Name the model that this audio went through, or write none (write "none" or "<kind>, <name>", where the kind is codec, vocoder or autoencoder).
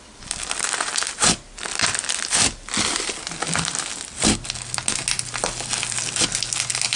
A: none